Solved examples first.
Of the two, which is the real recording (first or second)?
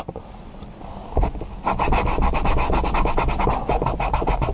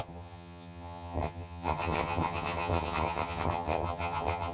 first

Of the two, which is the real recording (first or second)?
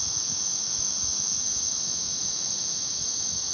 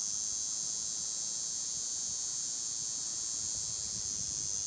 second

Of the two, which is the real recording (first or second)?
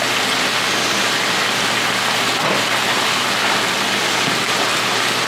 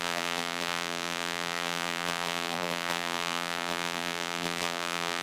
first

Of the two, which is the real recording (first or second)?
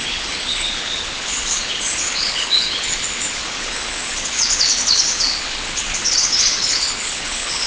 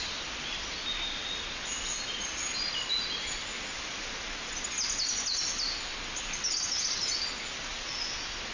second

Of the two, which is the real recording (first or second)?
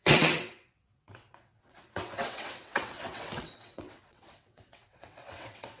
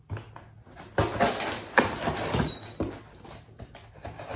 second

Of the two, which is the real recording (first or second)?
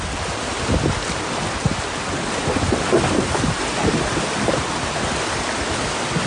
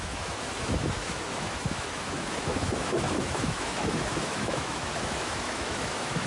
first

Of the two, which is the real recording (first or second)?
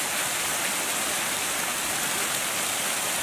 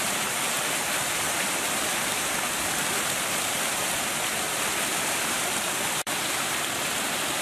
first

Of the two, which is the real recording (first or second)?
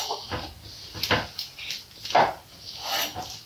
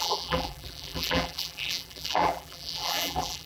first